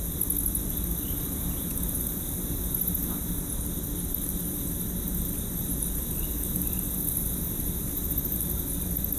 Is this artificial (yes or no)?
no